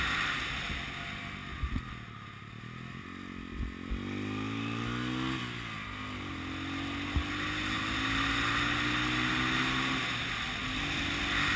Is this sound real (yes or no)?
yes